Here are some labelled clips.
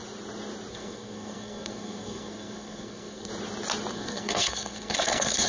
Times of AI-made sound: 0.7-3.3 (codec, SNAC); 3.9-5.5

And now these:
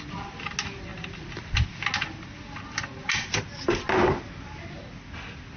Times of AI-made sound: none

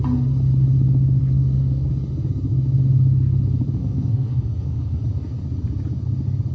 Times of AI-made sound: 1.2-1.9 (codec, SNAC); 3.8-5.0